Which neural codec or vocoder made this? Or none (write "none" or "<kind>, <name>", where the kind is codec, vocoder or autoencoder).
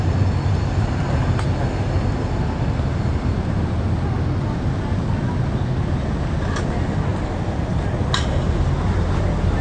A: none